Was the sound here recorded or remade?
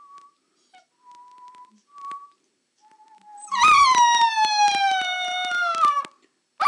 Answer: recorded